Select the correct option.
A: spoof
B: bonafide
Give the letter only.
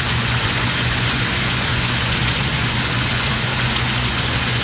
A